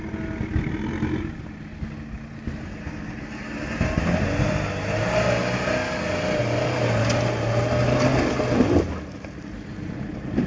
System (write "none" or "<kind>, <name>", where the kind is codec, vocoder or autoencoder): none